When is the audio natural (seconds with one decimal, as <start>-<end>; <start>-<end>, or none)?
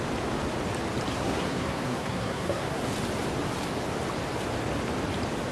0.0-1.1; 2.8-5.5